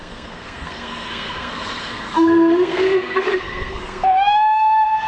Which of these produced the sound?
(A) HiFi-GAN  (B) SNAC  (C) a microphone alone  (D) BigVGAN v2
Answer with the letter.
B